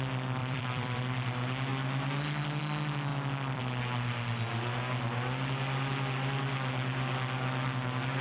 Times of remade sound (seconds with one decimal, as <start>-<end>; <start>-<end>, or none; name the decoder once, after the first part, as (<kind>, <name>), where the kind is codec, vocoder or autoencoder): 0.4-1.0 (vocoder, BigVGAN v2); 1.7-2.6; 3.1-3.6